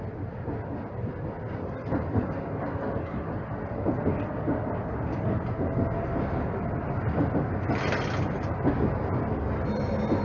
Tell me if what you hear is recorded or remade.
recorded